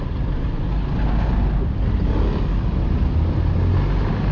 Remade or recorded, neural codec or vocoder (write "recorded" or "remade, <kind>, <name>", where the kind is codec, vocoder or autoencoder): recorded